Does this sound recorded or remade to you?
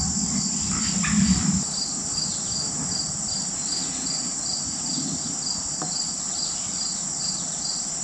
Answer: recorded